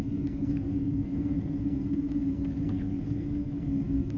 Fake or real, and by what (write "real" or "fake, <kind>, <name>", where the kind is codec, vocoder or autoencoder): fake, codec, SNAC